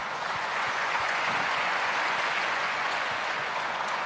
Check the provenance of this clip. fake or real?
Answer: fake